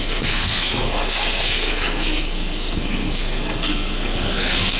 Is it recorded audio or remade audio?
remade